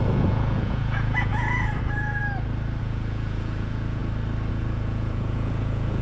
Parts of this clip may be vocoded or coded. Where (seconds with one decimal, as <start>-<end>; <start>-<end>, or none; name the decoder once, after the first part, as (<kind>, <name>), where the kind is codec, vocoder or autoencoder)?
0.0-2.2 (vocoder, Vocos); 2.8-4.0; 4.5-6.0